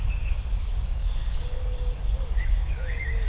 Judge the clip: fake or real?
fake